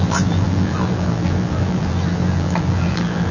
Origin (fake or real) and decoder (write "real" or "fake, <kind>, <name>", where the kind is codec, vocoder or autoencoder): fake, vocoder, BigVGAN v2